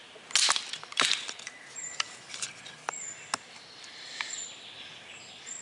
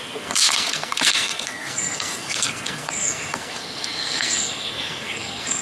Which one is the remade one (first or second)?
second